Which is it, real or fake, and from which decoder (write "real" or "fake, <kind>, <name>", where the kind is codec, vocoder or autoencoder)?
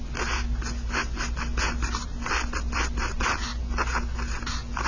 real